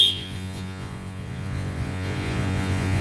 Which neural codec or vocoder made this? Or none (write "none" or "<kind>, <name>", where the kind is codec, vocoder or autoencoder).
vocoder, Vocos